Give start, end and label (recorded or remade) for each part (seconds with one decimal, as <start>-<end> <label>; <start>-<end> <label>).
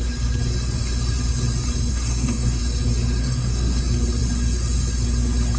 0.0-1.9 recorded; 1.9-2.6 remade; 2.6-3.2 recorded; 3.2-3.8 remade; 3.8-5.6 recorded